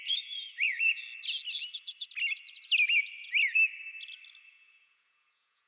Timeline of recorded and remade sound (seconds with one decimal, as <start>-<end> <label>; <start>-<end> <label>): 0.0-1.0 remade; 1.0-4.4 recorded; 4.4-5.7 remade